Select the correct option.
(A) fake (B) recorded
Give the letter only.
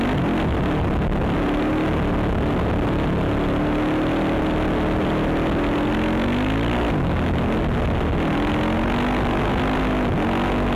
B